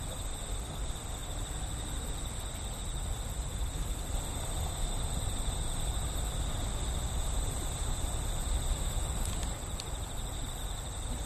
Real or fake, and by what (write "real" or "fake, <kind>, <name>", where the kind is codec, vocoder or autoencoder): real